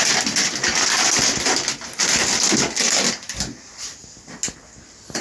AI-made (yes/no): no